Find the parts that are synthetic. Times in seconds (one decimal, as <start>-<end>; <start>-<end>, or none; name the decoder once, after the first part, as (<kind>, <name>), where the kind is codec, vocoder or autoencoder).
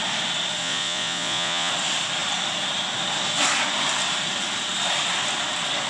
0.6-1.7 (vocoder, Vocos)